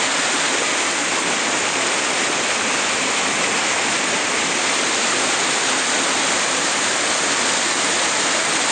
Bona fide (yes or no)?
yes